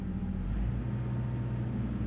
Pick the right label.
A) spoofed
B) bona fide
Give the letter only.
B